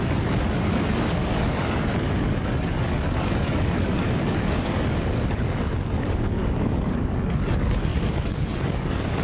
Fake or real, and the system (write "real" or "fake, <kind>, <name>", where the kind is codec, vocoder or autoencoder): fake, codec, DAC